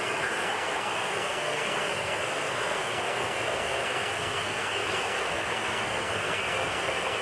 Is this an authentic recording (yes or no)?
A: no